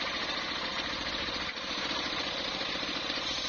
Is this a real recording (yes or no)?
no